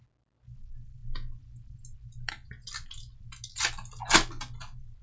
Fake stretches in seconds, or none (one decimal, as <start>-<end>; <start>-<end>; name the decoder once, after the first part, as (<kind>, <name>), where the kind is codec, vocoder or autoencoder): none